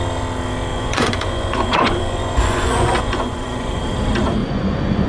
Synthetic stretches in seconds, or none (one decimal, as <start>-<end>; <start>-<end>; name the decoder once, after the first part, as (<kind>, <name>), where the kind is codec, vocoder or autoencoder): 0.7-3.8 (vocoder, Vocos); 4.4-5.1